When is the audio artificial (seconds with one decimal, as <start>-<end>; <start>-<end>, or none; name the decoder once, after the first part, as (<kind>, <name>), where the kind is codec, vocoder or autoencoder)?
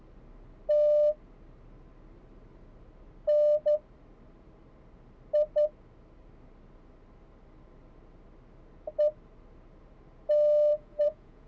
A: 10.7-11.5 (vocoder, Vocos)